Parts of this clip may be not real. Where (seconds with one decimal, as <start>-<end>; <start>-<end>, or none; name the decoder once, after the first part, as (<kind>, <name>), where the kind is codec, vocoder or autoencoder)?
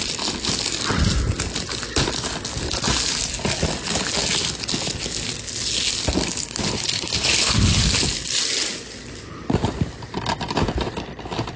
6.4-7.9 (codec, HILCodec)